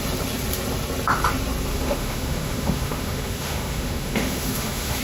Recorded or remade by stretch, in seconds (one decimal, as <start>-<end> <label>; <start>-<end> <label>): 0.0-1.7 recorded; 1.7-5.0 remade